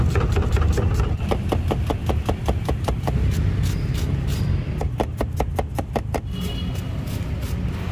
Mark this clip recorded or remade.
recorded